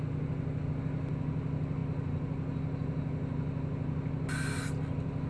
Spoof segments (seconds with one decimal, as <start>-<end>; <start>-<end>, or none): none